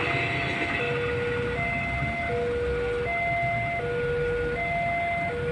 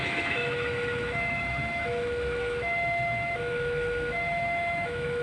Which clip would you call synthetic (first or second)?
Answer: second